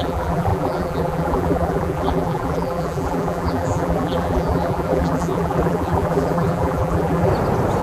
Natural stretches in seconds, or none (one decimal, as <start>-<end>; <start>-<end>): 7.3-7.8